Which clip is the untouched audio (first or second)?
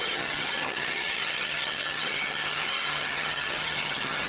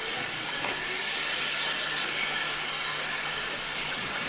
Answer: second